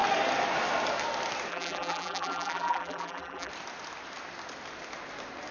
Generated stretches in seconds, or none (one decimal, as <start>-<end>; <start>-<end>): 1.5-3.5